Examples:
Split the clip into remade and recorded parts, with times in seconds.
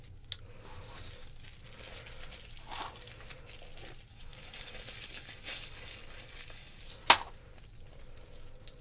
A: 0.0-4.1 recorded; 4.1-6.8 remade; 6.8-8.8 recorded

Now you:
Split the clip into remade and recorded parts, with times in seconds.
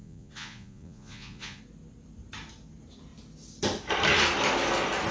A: 0.0-1.6 remade; 1.6-5.1 recorded